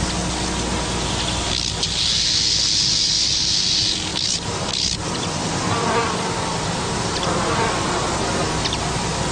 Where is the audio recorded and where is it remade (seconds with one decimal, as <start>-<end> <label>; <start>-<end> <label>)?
0.0-4.1 recorded; 4.1-8.8 remade; 8.8-9.3 recorded